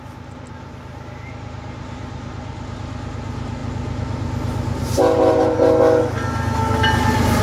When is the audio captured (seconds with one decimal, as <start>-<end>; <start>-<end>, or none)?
0.0-3.6; 5.3-7.4